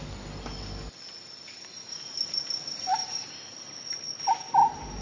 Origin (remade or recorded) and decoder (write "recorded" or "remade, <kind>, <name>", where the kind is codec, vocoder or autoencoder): recorded